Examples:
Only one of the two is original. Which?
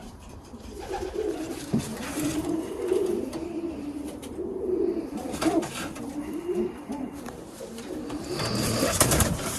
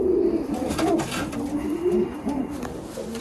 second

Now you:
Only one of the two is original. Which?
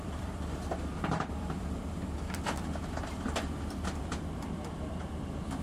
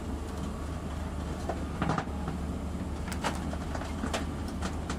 second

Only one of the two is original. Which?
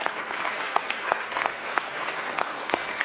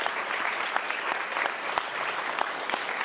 second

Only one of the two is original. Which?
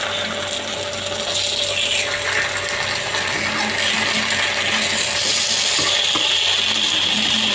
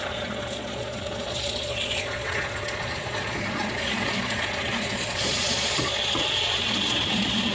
first